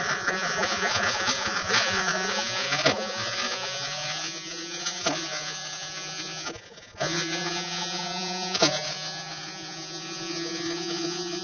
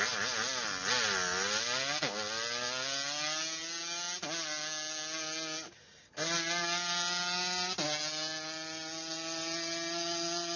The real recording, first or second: second